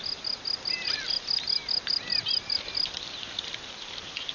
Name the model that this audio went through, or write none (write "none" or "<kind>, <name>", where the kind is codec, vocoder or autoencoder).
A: none